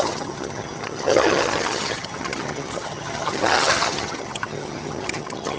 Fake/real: fake